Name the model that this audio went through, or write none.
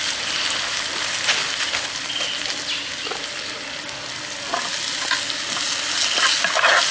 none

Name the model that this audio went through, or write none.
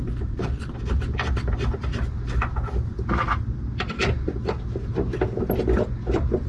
none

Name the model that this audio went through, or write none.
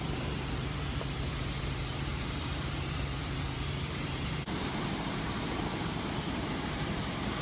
vocoder, BigVGAN v2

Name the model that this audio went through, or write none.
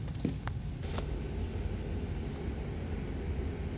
none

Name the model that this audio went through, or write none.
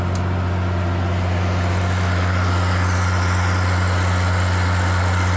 none